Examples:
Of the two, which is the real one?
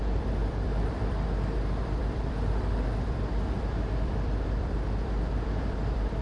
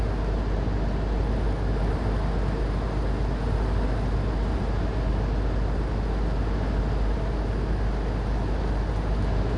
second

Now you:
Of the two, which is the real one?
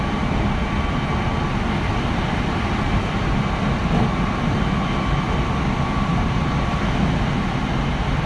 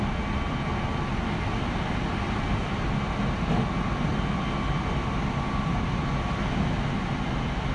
second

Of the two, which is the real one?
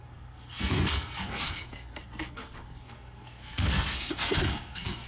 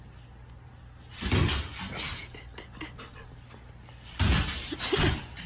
second